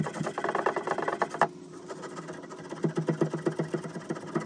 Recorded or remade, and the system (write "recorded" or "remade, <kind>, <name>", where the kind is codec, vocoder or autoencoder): recorded